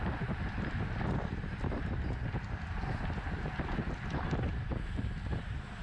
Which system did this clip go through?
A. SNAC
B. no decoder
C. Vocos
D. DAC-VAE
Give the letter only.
B